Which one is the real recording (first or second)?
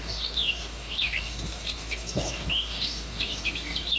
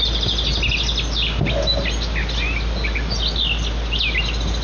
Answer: second